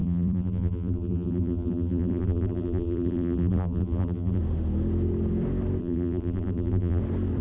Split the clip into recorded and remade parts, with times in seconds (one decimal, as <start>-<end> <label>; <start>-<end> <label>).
0.0-4.4 remade; 4.4-5.8 recorded; 5.8-7.0 remade; 7.0-7.4 recorded